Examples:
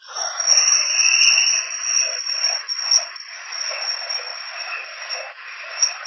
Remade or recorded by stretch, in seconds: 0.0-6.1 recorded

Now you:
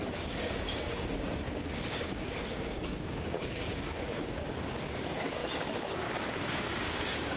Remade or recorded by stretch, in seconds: 0.0-7.4 remade

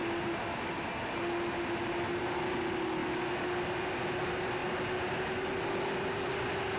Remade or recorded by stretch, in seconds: 0.0-6.8 recorded

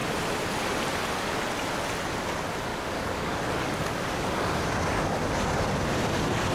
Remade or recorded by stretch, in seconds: 0.0-2.7 recorded; 2.7-4.6 remade; 4.6-6.5 recorded

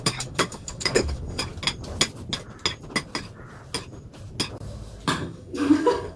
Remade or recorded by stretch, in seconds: 0.0-1.5 remade; 1.5-5.2 recorded; 5.2-6.2 remade

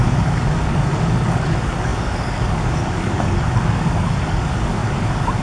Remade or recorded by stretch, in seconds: 0.0-5.4 remade